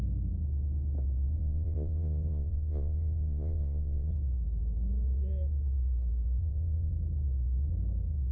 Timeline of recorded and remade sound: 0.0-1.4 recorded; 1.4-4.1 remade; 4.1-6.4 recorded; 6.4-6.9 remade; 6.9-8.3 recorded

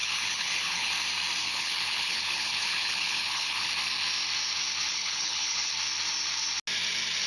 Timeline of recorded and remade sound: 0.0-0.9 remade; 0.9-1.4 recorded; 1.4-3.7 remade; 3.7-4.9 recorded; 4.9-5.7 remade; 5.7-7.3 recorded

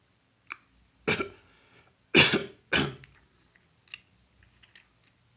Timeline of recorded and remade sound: 0.0-5.4 recorded

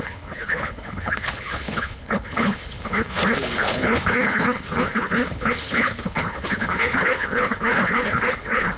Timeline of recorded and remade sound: 0.0-8.8 remade

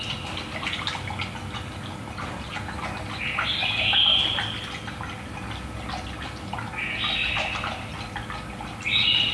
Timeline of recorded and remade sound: 0.0-9.3 recorded